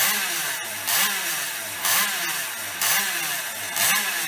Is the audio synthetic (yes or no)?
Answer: no